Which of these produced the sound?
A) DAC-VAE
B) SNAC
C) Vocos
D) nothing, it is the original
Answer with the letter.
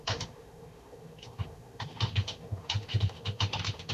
A